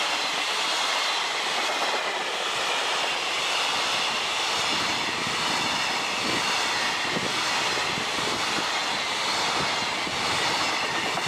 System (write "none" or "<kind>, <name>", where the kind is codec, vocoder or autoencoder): none